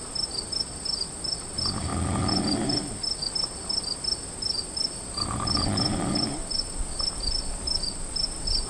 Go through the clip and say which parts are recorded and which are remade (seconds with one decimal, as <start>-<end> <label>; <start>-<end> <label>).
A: 0.0-8.7 recorded